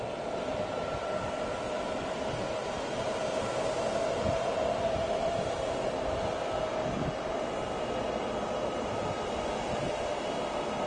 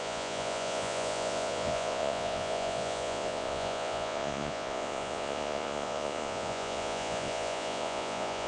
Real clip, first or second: first